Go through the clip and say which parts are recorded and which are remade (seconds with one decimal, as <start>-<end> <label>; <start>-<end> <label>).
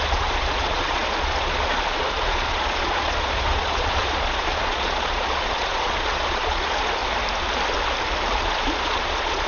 0.0-7.0 remade; 7.0-8.4 recorded; 8.4-9.5 remade